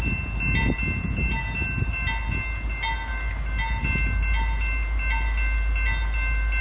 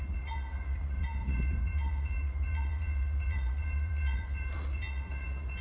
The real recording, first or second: first